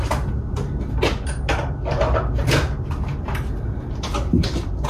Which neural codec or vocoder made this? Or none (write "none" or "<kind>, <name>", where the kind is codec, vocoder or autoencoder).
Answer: none